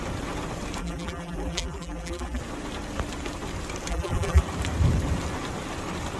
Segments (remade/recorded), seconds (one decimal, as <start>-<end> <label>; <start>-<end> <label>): 0.0-0.8 recorded; 0.8-2.4 remade; 2.4-3.9 recorded; 3.9-4.4 remade; 4.4-6.2 recorded